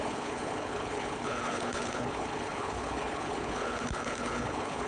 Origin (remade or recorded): remade